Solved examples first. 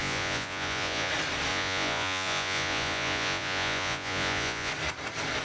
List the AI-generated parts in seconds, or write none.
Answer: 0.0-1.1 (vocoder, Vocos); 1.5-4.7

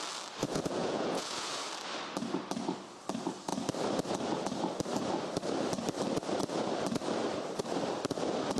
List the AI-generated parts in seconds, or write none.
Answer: 0.4-1.7 (vocoder, Vocos)

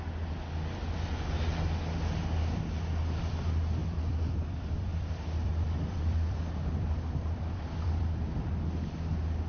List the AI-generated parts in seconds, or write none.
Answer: 3.8-8.5 (vocoder, BigVGAN v2)

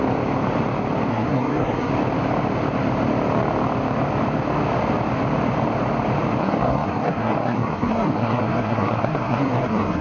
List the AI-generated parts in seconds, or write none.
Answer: 1.1-1.9 (codec, SNAC); 6.4-10.0

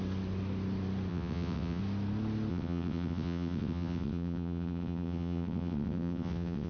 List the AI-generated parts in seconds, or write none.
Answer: 1.1-1.8 (vocoder, WaveNeXt); 2.5-6.7

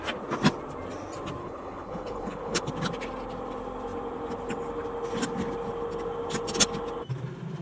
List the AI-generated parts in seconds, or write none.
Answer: 1.4-2.7 (codec, HILCodec)